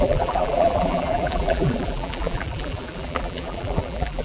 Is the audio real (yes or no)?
no